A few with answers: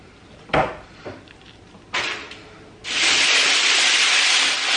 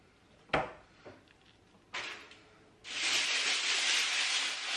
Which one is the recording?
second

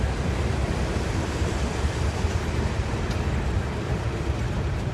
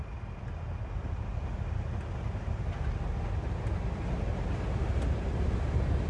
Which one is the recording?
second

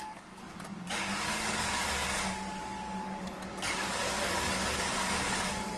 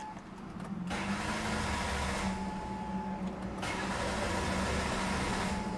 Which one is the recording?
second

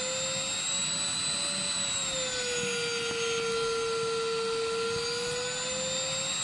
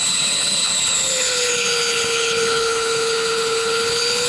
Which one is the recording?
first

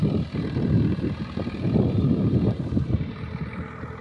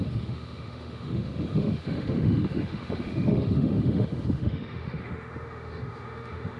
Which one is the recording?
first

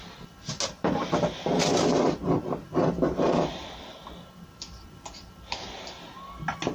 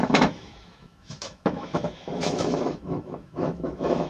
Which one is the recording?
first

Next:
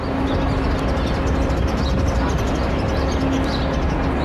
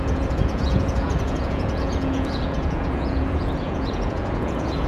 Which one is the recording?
first